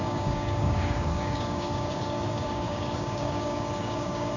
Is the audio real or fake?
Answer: fake